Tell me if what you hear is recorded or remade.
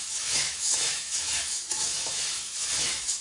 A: remade